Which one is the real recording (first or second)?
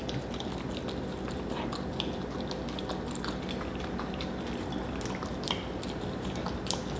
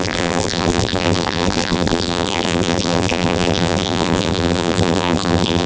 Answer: first